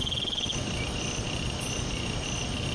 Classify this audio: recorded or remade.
recorded